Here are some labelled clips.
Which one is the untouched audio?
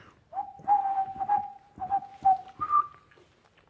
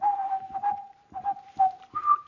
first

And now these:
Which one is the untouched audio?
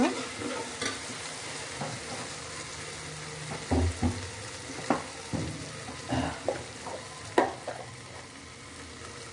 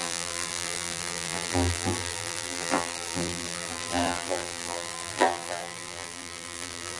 first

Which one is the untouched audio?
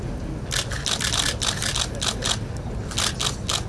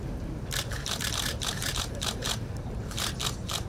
first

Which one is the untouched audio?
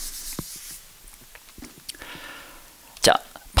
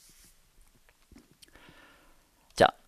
first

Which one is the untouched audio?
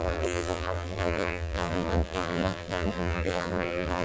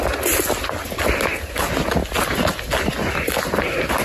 second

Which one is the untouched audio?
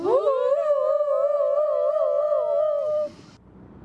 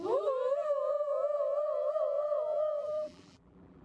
first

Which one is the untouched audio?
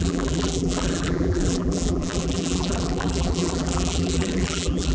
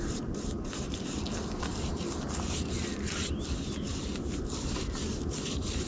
second